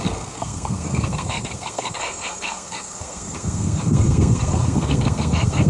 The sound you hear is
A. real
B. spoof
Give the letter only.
B